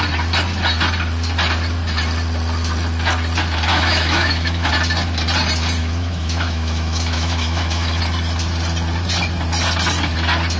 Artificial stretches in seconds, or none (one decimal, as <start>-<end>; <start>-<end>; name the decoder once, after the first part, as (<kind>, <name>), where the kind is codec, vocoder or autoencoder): 3.7-4.7 (autoencoder, DAC-VAE); 5.8-8.0